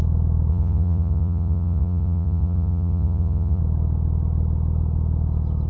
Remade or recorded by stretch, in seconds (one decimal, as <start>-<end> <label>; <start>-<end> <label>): 0.0-0.5 recorded; 0.5-3.6 remade; 3.6-5.7 recorded